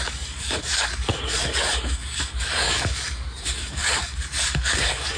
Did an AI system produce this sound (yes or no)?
yes